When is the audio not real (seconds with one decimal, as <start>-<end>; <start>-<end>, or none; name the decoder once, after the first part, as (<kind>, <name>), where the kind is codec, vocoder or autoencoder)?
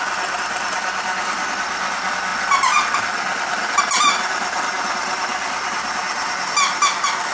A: none